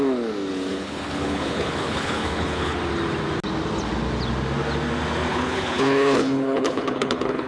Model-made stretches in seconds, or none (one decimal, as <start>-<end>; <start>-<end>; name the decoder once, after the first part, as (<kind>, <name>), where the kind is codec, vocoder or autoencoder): 0.7-2.8 (codec, HILCodec); 5.3-7.5